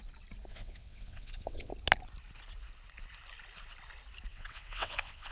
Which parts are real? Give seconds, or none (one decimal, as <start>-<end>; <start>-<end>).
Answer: 0.0-0.5; 1.7-4.3